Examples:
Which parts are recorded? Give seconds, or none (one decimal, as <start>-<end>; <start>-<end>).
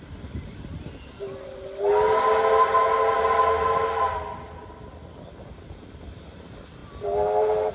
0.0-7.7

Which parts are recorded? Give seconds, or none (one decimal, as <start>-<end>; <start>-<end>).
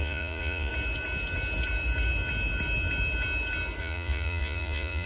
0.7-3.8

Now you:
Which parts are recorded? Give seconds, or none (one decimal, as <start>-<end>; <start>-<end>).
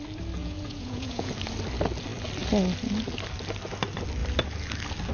0.0-0.4; 1.3-5.1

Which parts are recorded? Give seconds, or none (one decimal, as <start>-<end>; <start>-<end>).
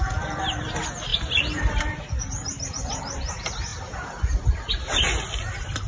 0.0-1.1; 2.0-5.9